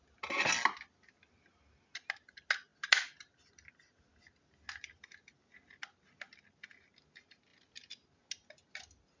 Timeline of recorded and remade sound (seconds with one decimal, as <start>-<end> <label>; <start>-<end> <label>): 0.0-9.2 recorded